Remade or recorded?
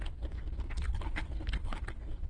recorded